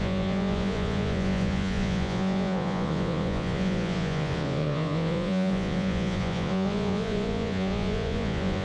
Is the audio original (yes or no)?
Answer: no